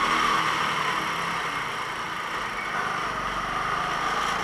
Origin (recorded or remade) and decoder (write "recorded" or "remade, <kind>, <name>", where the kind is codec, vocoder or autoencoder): recorded